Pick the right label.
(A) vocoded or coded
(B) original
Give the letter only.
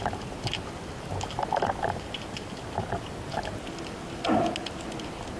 B